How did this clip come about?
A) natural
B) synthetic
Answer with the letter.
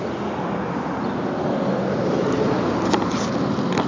A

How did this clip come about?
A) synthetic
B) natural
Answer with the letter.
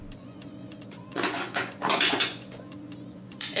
A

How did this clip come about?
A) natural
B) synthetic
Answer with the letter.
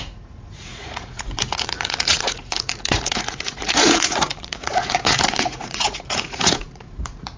B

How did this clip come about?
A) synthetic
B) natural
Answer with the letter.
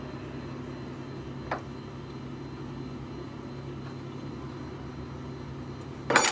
B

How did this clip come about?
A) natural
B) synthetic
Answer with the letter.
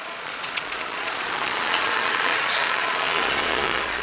B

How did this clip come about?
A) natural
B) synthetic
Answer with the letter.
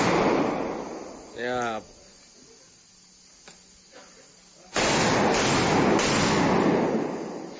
A